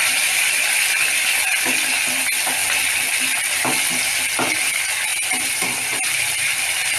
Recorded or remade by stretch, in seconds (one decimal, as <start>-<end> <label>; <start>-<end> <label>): 0.0-0.5 remade; 0.5-5.1 recorded; 5.1-6.6 remade; 6.6-7.0 recorded